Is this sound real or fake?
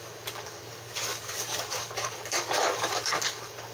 fake